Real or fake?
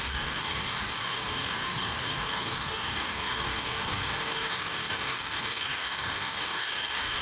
fake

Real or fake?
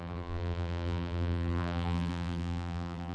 fake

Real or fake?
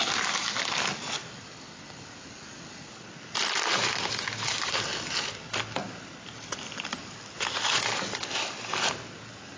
real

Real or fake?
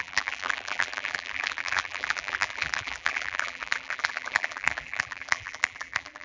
fake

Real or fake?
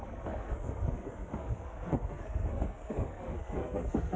fake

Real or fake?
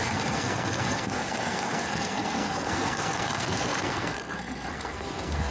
fake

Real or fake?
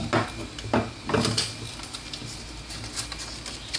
real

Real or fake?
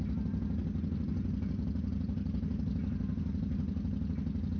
real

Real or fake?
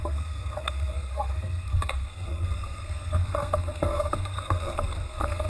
fake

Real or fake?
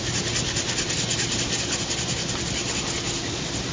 real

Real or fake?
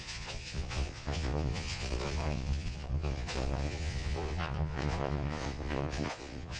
fake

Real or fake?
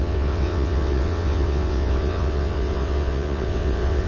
fake